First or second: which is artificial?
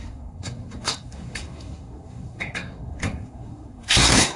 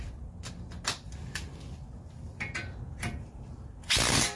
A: first